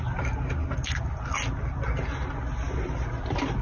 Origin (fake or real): real